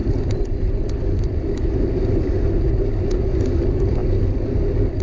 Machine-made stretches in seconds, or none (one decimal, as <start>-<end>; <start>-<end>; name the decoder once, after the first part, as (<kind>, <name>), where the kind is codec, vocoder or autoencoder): 0.0-3.0 (vocoder, BigVGAN v2)